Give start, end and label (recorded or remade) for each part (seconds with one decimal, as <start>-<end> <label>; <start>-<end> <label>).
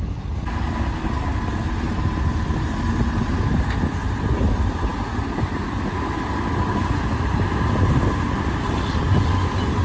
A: 0.0-9.8 recorded